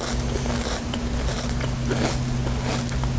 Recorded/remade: recorded